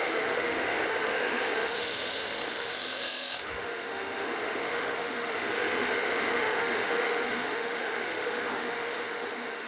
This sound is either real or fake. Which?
fake